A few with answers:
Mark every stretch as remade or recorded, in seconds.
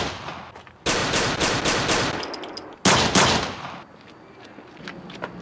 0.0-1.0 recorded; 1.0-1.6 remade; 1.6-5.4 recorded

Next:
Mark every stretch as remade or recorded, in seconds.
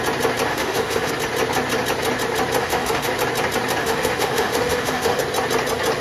0.0-0.5 recorded; 0.5-1.1 remade; 1.1-2.6 recorded; 2.6-3.1 remade; 3.1-3.8 recorded; 3.8-5.2 remade; 5.2-6.0 recorded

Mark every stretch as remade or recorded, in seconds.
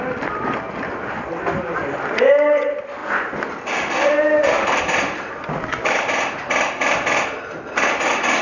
0.0-8.4 recorded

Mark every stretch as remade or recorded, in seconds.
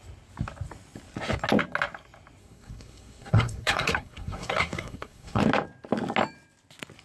0.0-2.4 recorded; 2.4-5.4 remade; 5.4-7.0 recorded